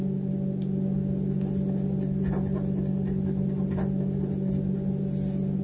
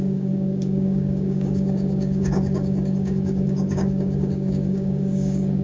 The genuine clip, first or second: first